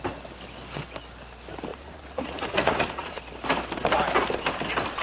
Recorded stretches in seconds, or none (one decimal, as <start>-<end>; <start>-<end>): 0.0-1.7; 3.2-5.0